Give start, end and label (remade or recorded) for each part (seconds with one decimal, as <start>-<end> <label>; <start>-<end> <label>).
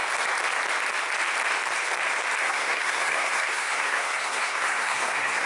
0.0-2.4 recorded; 2.4-5.5 remade